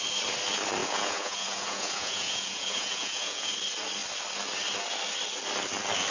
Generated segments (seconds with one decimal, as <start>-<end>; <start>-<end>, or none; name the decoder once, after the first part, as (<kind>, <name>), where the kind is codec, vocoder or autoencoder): 0.8-3.5 (vocoder, Vocos)